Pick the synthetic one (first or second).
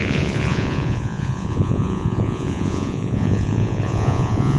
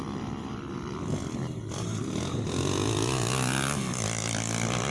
first